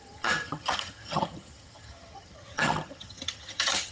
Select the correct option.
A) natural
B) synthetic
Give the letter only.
B